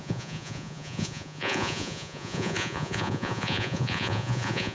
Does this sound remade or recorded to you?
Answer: remade